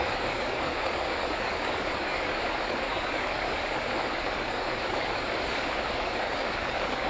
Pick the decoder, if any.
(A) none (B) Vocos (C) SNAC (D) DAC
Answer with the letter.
D